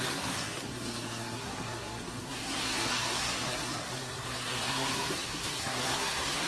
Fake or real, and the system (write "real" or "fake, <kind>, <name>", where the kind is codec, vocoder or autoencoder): fake, codec, SNAC